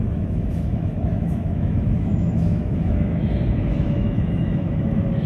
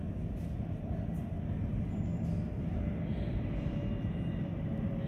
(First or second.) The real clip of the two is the second